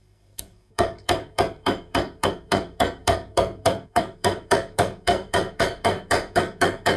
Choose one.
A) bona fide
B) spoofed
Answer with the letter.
B